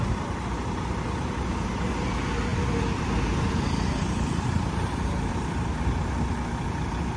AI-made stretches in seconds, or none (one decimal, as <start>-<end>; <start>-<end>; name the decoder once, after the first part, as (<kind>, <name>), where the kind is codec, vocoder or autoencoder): none